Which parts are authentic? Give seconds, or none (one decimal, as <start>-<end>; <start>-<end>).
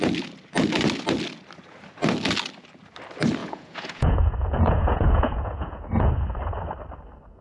0.0-3.4; 6.1-7.4